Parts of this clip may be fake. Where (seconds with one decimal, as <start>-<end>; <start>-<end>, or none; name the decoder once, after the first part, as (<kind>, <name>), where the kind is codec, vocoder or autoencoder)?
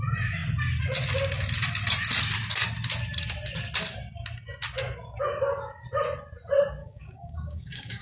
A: 6.8-8.0 (codec, DAC)